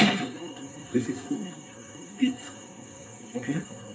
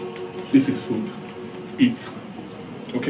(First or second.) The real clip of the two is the second